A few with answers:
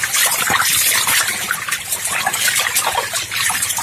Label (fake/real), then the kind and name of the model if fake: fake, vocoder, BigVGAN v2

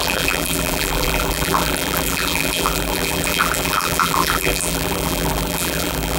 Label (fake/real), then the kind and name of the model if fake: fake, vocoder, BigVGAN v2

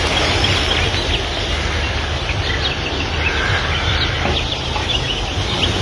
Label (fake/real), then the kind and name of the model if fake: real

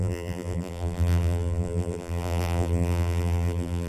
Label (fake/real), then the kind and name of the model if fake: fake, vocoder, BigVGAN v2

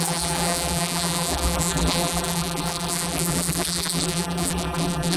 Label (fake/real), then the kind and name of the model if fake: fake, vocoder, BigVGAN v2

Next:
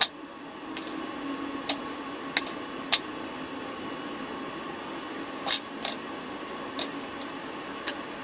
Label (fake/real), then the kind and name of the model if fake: real